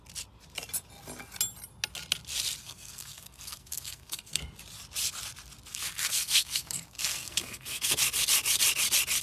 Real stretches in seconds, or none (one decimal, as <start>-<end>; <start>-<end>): 0.0-2.6; 4.4-5.7; 8.0-9.2